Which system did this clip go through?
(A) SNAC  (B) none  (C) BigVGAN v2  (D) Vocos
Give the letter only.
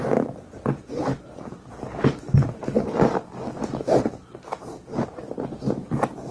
B